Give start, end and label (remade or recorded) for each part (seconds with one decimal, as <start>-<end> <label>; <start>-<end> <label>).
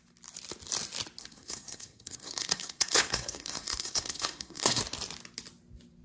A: 0.0-1.2 recorded; 1.2-4.8 remade; 4.8-6.0 recorded